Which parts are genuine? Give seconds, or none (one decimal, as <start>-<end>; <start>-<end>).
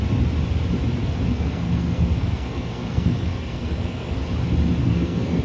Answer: 0.0-1.0; 4.2-4.8